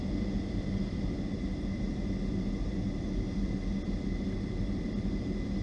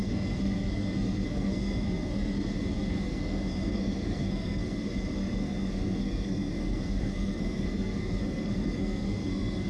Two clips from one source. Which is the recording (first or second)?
first